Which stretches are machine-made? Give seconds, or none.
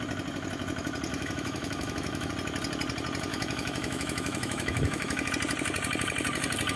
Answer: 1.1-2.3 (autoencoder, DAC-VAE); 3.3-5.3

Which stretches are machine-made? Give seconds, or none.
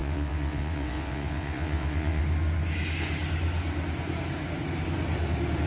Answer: 0.0-2.2 (vocoder, WaveNeXt)